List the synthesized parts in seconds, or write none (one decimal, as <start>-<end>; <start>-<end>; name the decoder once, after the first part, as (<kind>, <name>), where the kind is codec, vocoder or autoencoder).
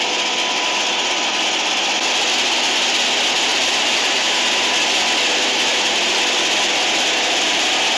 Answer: 3.5-4.5 (vocoder, BigVGAN v2)